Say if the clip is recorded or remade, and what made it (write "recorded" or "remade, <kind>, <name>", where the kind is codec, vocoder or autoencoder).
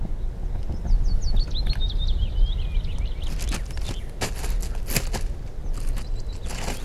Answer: recorded